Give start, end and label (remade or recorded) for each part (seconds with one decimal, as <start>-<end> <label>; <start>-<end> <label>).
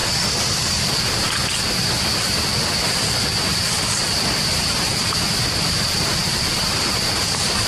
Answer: 0.0-1.4 remade; 1.4-5.5 recorded; 5.5-7.7 remade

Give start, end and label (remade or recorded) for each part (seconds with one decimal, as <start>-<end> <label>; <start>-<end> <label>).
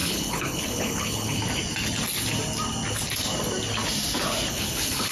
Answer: 0.0-1.4 remade; 1.4-4.5 recorded; 4.5-5.1 remade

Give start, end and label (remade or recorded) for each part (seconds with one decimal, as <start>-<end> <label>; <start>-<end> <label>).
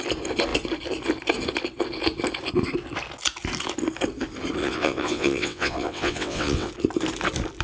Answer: 0.0-4.6 recorded; 4.6-6.7 remade; 6.7-7.6 recorded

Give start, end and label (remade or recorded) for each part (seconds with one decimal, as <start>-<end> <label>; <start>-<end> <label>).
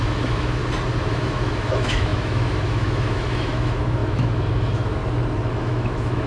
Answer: 0.0-0.6 remade; 0.6-1.1 recorded; 1.1-5.0 remade; 5.0-5.5 recorded; 5.5-6.3 remade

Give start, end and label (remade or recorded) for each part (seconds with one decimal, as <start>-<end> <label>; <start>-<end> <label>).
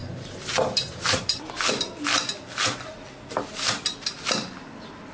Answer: 0.0-1.7 remade; 1.7-5.1 recorded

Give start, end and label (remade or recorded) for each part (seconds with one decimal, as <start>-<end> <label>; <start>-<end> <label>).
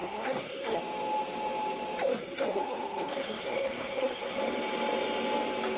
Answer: 0.0-0.8 remade; 0.8-2.1 recorded; 2.1-4.4 remade; 4.4-5.8 recorded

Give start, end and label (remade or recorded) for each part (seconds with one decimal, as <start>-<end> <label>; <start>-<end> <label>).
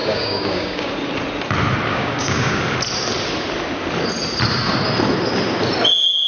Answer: 0.0-0.9 remade; 0.9-1.9 recorded; 1.9-2.6 remade; 2.6-6.3 recorded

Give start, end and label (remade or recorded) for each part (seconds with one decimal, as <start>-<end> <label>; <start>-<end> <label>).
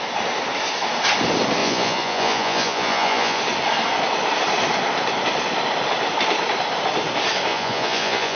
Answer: 0.0-1.6 recorded; 1.6-3.4 remade; 3.4-7.5 recorded; 7.5-8.4 remade